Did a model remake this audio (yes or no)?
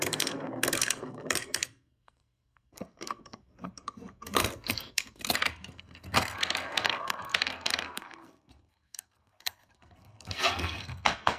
yes